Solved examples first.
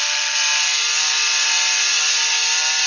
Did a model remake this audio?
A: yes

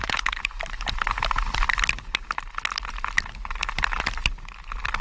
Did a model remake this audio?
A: no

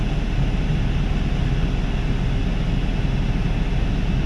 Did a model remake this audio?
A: no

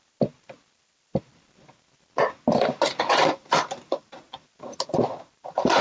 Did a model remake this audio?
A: yes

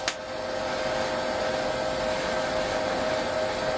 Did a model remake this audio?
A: no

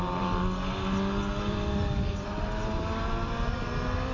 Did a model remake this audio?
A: no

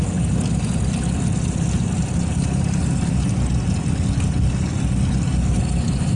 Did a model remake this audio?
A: no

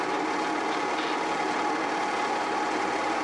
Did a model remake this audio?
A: no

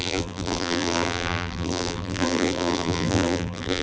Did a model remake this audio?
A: yes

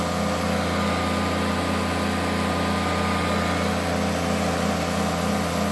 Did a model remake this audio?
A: no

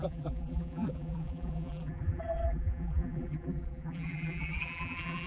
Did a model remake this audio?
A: yes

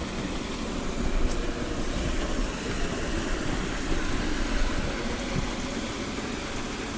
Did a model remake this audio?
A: no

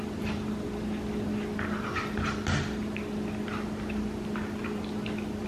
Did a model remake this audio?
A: yes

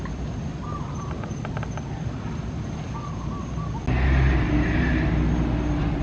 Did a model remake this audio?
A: no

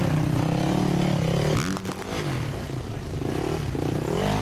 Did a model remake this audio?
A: no